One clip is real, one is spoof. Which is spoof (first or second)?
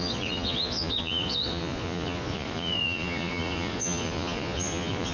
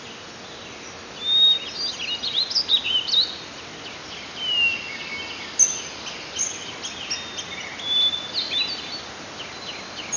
first